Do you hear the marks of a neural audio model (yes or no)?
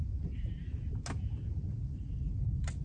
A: no